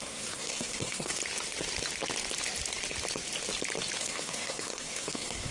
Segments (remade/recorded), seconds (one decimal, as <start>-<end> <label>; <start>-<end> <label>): 0.0-1.2 remade; 1.2-4.0 recorded; 4.0-5.5 remade